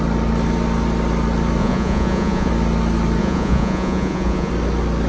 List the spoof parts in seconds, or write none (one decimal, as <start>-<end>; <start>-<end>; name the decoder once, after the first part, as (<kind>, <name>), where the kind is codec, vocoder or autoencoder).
1.6-2.5 (vocoder, Vocos); 3.2-4.5